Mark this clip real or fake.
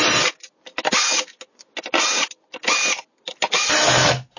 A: real